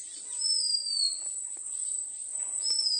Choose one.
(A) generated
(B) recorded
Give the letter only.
B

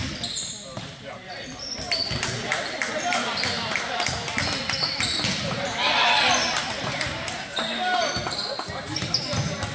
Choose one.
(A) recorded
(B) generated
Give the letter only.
A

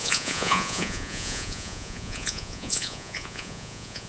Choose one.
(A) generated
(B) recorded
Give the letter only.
A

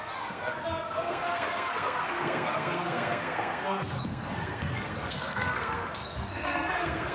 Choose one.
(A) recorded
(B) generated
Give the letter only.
B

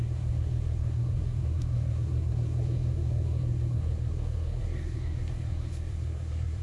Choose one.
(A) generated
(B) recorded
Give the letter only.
A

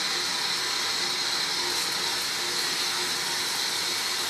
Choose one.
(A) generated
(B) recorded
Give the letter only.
B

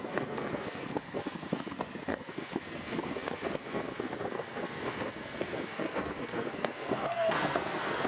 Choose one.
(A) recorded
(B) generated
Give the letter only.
B